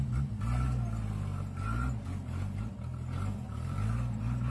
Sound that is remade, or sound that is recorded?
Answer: recorded